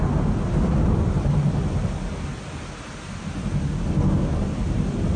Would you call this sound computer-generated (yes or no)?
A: no